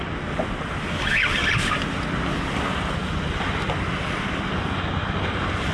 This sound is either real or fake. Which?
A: real